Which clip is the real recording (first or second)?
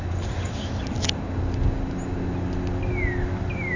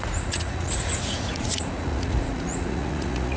first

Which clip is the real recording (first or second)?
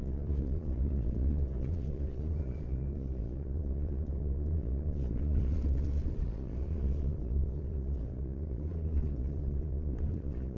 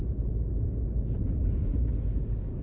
second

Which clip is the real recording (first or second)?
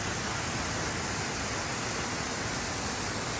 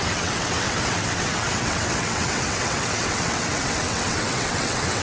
first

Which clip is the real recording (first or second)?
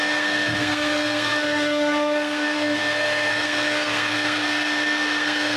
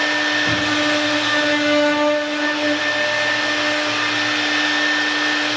second